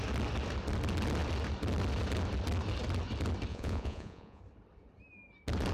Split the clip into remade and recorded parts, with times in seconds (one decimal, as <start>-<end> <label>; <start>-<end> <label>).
0.0-3.5 recorded; 3.5-4.4 remade; 4.4-5.7 recorded